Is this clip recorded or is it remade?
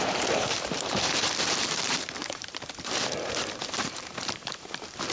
remade